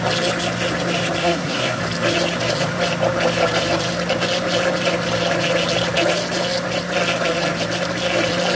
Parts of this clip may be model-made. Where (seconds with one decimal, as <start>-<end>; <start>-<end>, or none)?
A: 1.2-1.8